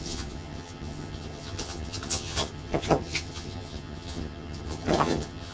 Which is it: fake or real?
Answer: fake